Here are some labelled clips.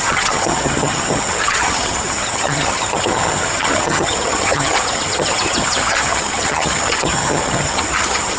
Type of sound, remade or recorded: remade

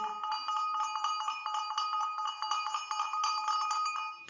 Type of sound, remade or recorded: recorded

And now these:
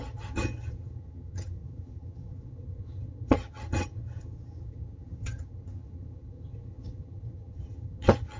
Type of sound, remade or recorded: remade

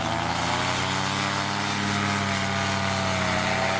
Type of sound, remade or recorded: recorded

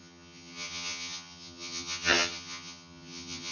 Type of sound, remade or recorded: remade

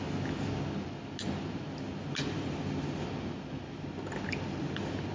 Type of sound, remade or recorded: recorded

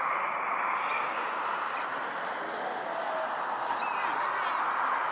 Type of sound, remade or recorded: recorded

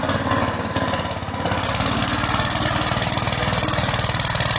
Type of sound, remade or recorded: recorded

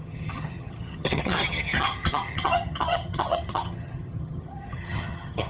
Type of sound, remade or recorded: remade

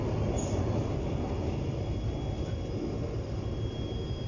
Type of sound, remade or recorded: recorded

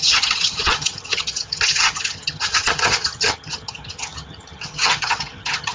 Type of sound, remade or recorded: remade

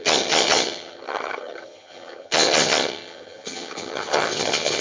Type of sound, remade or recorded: remade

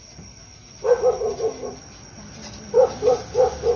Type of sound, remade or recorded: recorded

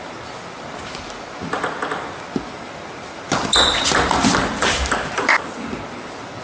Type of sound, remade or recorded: recorded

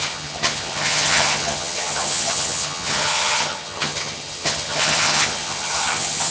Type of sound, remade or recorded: remade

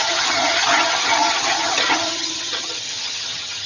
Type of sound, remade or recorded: remade